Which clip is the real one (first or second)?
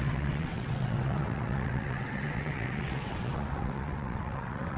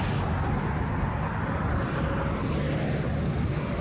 second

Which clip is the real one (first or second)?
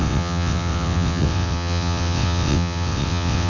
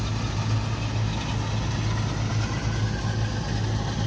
second